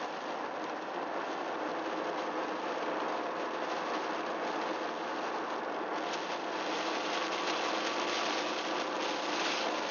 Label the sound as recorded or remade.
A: recorded